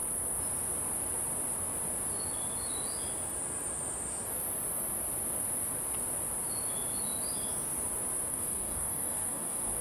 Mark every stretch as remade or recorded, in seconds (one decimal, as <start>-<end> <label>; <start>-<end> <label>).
0.0-8.3 recorded; 8.3-9.8 remade